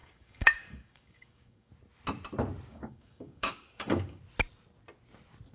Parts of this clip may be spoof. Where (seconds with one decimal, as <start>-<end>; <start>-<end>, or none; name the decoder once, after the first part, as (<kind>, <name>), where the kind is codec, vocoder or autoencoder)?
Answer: 0.0-1.7 (codec, DAC); 2.7-4.2